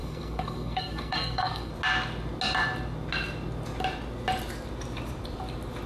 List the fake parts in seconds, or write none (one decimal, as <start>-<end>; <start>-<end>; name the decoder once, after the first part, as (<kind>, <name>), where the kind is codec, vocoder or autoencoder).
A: 0.0-1.7 (codec, SNAC)